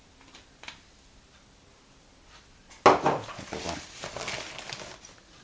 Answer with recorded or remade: recorded